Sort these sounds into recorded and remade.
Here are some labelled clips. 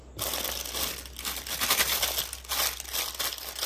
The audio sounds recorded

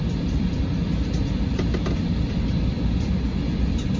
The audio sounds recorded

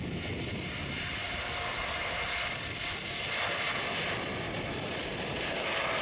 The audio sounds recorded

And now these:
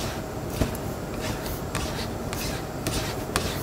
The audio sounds recorded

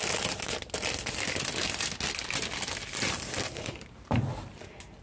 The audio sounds recorded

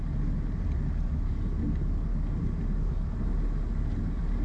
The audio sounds recorded